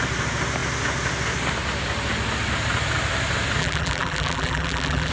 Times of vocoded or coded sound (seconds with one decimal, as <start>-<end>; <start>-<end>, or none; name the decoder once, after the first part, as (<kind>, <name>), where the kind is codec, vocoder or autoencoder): 3.6-5.1 (vocoder, BigVGAN v2)